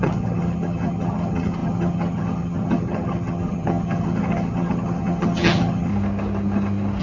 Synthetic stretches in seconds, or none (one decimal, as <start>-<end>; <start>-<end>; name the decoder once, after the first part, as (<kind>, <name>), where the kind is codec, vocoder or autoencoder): 0.0-5.9 (vocoder, HiFi-GAN)